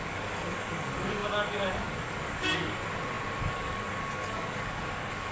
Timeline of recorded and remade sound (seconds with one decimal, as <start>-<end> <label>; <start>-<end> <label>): 0.0-2.8 remade; 2.8-3.4 recorded; 3.4-5.3 remade